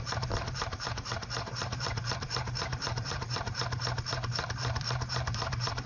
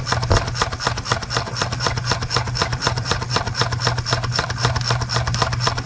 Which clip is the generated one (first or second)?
first